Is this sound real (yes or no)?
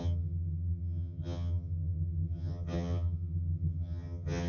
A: no